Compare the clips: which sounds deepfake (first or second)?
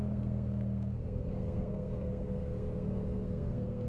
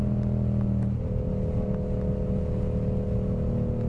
first